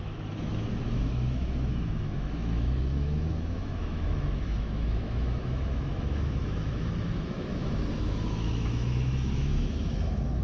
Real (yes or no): no